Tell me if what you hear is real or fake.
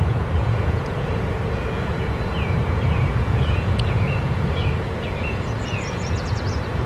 fake